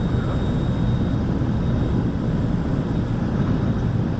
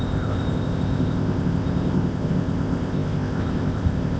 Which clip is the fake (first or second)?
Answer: second